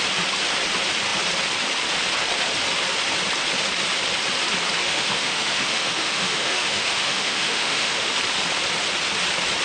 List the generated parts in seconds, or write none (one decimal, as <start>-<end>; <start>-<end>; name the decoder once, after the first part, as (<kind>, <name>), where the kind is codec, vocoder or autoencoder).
4.8-8.1 (autoencoder, DAC-VAE)